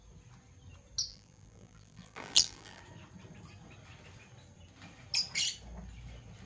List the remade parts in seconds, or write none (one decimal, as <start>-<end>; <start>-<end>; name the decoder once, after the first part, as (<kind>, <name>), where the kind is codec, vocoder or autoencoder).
1.1-2.8 (vocoder, BigVGAN v2)